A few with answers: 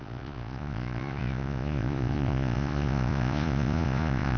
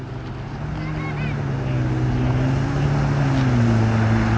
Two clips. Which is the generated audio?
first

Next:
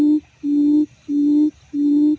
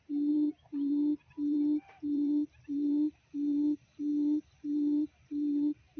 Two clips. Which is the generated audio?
second